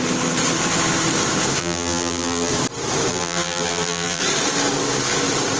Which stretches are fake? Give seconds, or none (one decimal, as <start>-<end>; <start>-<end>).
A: 1.6-2.5; 3.1-4.2